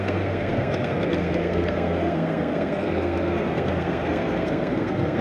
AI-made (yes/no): yes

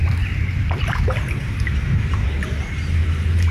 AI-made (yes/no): no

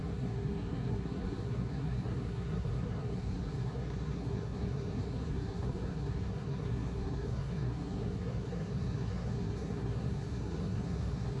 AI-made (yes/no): yes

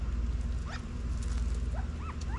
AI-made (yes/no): no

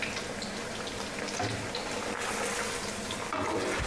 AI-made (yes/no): no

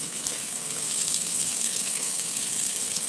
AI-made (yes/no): yes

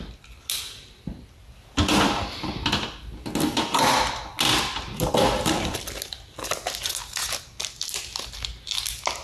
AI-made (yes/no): no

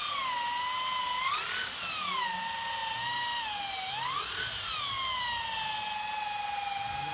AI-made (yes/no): no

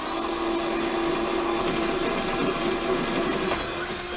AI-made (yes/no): no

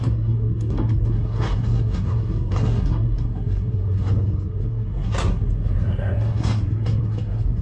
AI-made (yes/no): yes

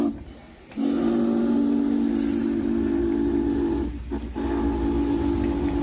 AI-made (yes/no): no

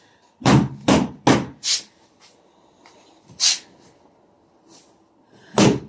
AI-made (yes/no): no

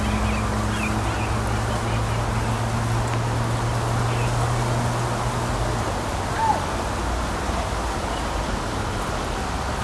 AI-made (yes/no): no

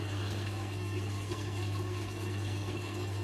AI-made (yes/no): yes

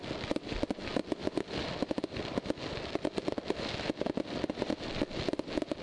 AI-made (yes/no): no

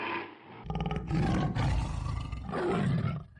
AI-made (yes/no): no